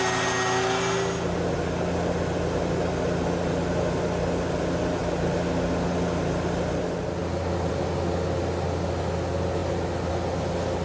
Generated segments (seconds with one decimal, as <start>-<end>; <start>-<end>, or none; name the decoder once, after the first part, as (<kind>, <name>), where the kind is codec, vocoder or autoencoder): none